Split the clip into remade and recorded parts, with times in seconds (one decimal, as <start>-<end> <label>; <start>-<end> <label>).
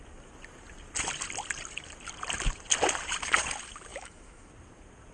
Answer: 0.0-3.9 recorded; 3.9-4.5 remade; 4.5-5.1 recorded